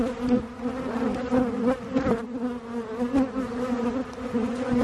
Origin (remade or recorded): recorded